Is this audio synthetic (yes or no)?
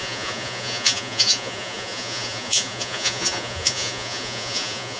yes